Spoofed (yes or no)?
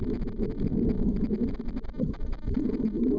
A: no